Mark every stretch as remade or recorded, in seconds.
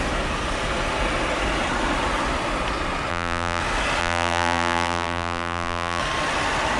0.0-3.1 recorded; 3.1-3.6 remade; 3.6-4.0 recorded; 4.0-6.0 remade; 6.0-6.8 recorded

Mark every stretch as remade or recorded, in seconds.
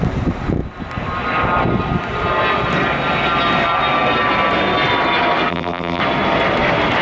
0.0-5.5 recorded; 5.5-6.0 remade; 6.0-7.0 recorded